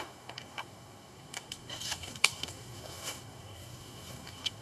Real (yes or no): no